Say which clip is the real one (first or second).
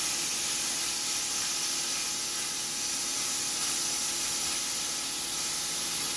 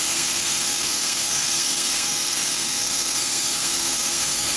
first